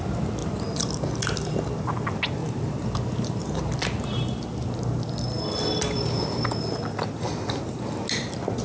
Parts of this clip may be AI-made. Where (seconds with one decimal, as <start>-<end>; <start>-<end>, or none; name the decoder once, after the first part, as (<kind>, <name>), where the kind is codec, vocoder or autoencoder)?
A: 0.4-0.9 (vocoder, BigVGAN v2); 2.4-4.8